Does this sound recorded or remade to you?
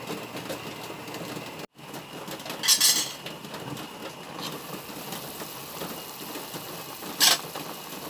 recorded